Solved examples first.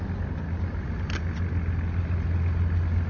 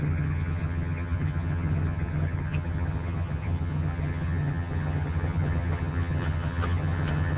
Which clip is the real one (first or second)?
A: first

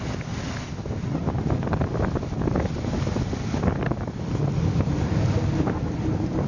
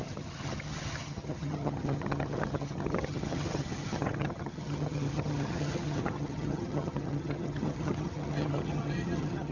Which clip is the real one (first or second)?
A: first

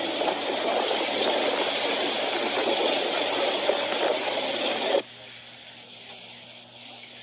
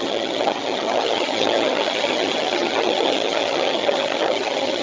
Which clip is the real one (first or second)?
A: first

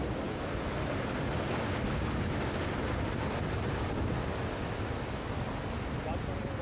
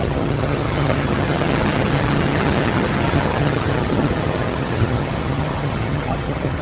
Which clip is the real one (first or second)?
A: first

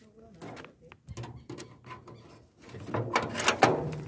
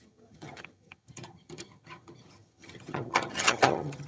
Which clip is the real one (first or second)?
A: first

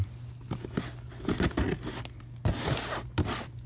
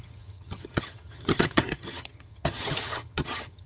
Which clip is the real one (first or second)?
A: first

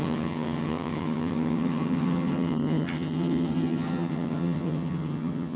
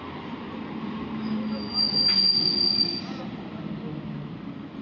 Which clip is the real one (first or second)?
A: second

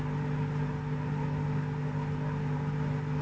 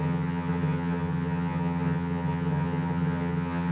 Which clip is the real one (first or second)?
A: first